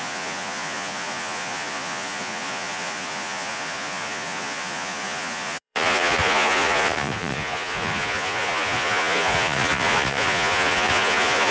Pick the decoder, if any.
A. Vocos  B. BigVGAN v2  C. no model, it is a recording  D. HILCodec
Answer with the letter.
A